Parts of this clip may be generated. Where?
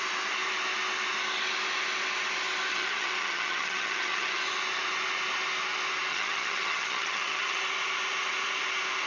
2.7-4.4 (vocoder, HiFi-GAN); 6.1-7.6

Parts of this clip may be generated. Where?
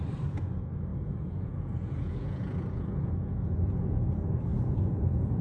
0.9-4.1 (vocoder, Vocos); 4.5-5.4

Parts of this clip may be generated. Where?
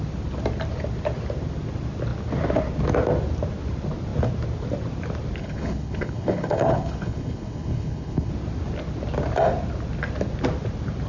5.4-8.3 (codec, HILCodec)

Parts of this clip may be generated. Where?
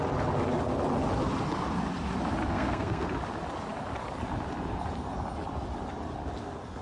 2.5-3.1 (codec, SNAC)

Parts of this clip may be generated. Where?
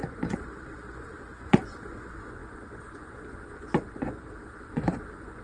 0.0-5.4 (vocoder, Vocos)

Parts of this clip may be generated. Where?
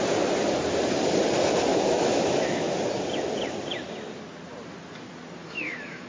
1.7-2.7 (autoencoder, DAC-VAE); 5.4-6.1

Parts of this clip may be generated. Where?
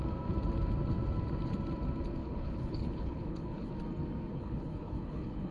2.2-3.7 (codec, HILCodec); 4.3-5.5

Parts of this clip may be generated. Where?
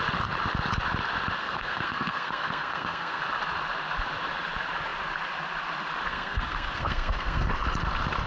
1.4-3.2 (codec, SNAC); 6.1-7.5